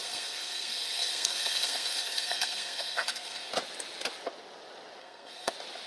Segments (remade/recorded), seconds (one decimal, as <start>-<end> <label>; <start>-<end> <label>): 0.0-3.5 remade; 3.5-5.0 recorded; 5.0-5.5 remade; 5.5-5.9 recorded